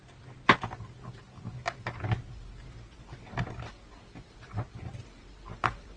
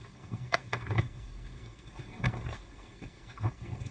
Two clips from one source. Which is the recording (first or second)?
first